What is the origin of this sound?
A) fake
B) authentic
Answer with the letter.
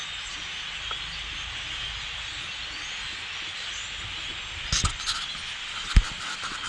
B